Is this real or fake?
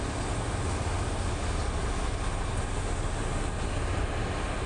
real